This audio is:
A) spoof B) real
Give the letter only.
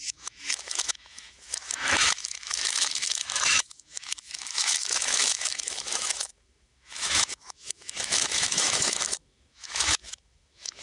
A